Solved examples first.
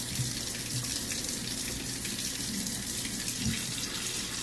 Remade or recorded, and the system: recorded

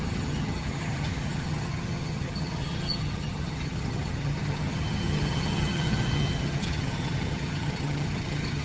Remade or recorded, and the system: remade, vocoder, HiFi-GAN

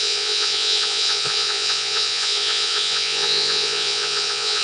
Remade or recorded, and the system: remade, vocoder, Vocos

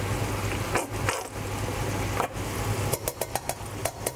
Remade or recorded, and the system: recorded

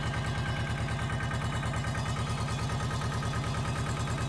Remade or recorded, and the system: recorded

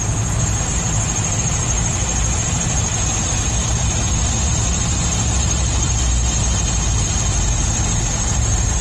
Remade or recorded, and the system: recorded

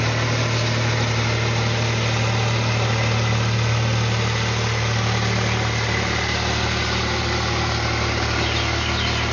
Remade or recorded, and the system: recorded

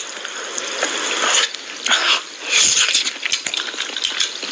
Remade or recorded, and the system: recorded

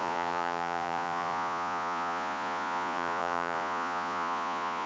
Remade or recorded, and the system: remade, vocoder, Vocos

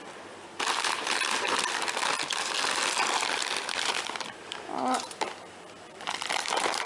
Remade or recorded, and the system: remade, vocoder, BigVGAN v2